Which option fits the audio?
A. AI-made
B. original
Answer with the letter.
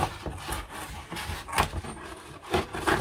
B